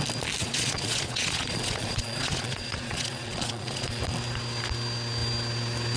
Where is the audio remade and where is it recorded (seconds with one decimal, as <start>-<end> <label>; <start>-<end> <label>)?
0.0-0.4 recorded; 0.4-4.0 remade; 4.0-6.0 recorded